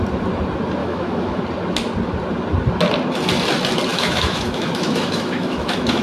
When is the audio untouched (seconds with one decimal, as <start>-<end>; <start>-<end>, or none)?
0.0-0.8; 1.4-3.9